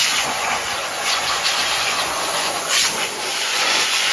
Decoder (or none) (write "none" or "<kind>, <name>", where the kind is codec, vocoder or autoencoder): vocoder, Vocos